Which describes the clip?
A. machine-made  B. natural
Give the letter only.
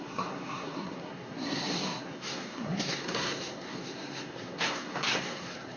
A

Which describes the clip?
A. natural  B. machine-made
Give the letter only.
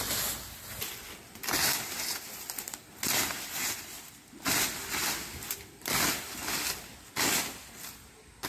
A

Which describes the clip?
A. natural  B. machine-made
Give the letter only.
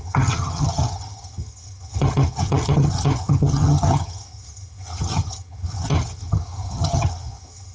B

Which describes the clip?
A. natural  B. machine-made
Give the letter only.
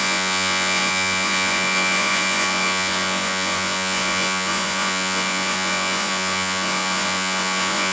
B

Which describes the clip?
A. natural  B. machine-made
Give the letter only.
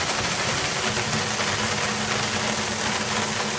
A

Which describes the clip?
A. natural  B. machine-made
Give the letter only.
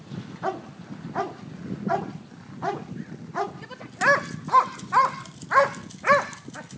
A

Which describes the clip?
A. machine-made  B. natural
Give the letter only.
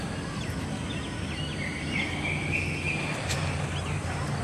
B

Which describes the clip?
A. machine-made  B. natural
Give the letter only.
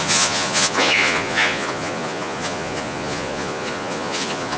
A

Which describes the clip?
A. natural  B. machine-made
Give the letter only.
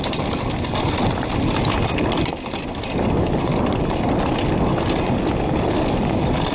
A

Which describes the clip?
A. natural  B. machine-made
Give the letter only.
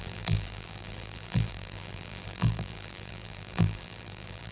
B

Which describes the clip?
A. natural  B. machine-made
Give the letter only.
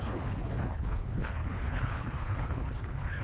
B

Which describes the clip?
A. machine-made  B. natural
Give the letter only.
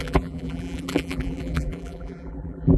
A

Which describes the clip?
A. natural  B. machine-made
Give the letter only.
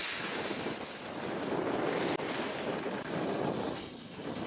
A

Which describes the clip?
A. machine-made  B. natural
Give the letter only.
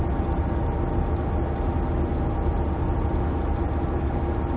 B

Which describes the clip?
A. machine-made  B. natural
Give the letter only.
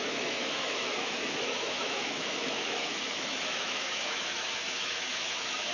A